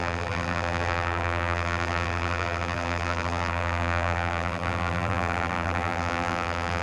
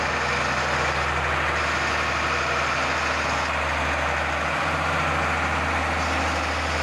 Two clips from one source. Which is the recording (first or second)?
second